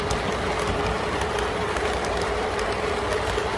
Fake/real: real